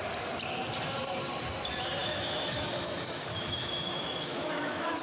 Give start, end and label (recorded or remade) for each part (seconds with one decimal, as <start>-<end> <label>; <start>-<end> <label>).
0.0-2.0 recorded; 2.0-5.0 remade